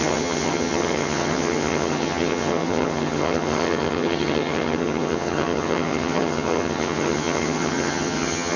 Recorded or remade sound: remade